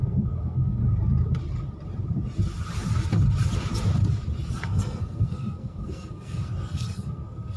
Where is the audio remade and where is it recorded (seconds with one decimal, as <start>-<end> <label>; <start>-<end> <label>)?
0.0-0.8 remade; 0.8-4.6 recorded; 4.6-7.6 remade